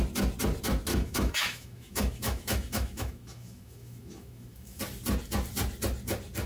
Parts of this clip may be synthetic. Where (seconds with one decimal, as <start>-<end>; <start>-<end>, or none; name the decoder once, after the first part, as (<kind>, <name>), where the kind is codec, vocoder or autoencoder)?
0.9-4.8 (autoencoder, DAC-VAE)